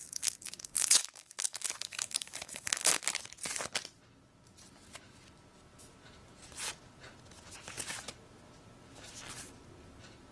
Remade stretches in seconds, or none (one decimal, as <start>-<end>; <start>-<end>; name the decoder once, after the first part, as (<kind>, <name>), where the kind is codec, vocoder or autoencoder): 0.0-3.0 (codec, DAC)

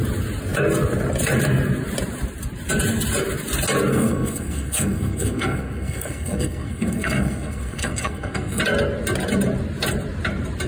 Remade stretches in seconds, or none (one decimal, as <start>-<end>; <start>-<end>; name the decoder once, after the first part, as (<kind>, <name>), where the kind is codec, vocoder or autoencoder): 3.9-8.6 (codec, SNAC)

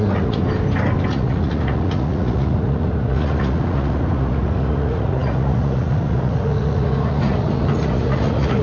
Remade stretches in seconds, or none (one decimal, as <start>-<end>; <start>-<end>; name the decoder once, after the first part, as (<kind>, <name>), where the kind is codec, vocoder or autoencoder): 0.0-0.4 (vocoder, Vocos); 1.1-8.6

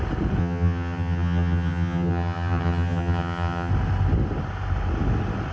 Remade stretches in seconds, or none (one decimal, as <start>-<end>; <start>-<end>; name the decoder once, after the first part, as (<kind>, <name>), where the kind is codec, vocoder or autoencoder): 0.4-3.7 (vocoder, HiFi-GAN)

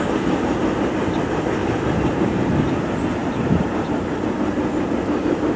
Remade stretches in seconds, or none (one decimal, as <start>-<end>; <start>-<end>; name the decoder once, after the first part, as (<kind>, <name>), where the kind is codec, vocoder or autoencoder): none

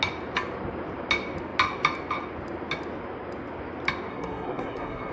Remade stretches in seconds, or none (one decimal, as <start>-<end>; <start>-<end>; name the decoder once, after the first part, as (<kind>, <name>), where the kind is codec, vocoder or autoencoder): 4.1-5.1 (codec, SNAC)

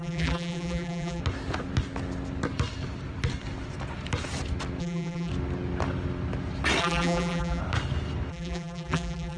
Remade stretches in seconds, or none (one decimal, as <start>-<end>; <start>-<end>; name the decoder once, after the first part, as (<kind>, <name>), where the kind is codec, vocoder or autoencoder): 0.0-1.2 (vocoder, BigVGAN v2); 4.8-5.3; 6.8-7.6; 8.3-9.4